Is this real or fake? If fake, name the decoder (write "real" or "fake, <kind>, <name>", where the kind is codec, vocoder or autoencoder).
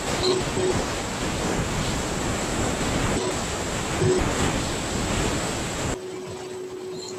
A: real